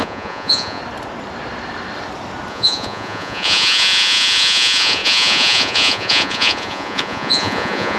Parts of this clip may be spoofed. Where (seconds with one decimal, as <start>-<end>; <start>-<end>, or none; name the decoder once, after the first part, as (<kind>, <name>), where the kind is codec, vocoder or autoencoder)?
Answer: 0.0-0.8 (vocoder, Vocos); 2.5-8.0